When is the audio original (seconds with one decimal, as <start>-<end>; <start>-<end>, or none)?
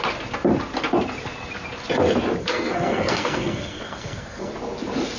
0.0-2.4; 4.5-5.2